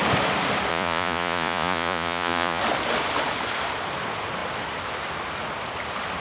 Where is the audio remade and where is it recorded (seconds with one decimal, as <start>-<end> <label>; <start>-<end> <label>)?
0.0-0.7 recorded; 0.7-2.6 remade; 2.6-6.2 recorded